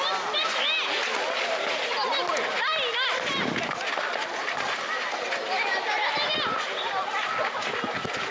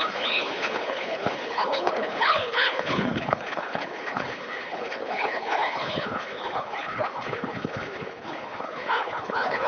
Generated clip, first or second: second